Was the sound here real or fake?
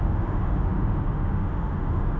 fake